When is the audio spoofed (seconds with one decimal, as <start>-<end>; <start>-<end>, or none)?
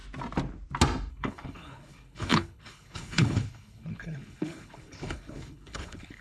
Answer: 1.1-6.2